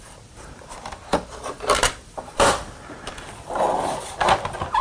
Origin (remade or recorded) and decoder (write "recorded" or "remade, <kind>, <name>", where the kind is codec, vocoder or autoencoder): remade, vocoder, BigVGAN v2